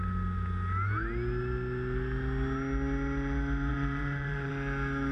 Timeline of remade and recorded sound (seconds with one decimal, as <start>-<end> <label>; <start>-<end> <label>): 0.0-3.7 recorded; 3.7-4.5 remade; 4.5-5.1 recorded